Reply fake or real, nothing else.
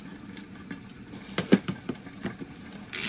real